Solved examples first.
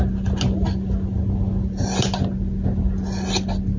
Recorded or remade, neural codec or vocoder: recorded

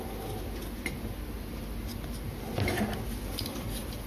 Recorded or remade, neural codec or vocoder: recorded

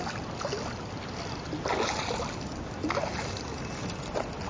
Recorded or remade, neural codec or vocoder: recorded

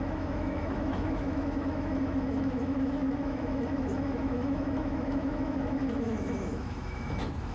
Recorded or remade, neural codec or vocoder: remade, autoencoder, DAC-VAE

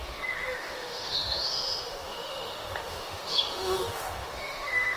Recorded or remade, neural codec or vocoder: remade, autoencoder, DAC-VAE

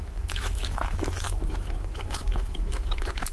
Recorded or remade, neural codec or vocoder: remade, autoencoder, DAC-VAE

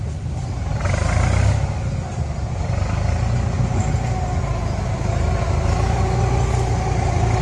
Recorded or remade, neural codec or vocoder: recorded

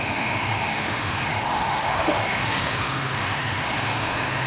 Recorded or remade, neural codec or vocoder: remade, autoencoder, DAC-VAE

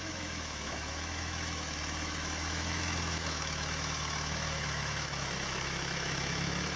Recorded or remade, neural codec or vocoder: remade, autoencoder, DAC-VAE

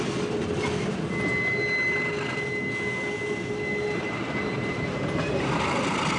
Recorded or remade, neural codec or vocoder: recorded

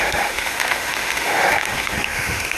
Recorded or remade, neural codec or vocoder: remade, autoencoder, DAC-VAE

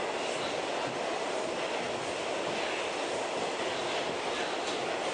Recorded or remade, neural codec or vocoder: recorded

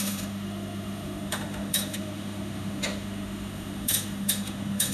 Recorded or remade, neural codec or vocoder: remade, autoencoder, DAC-VAE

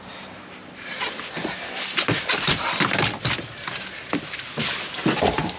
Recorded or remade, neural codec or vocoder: recorded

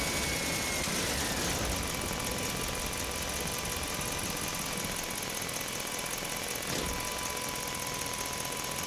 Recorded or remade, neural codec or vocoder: recorded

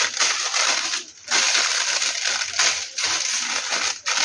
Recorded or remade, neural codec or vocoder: recorded